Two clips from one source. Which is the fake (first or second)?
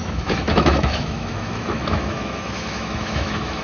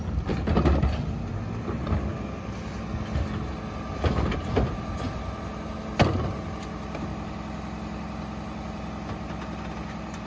first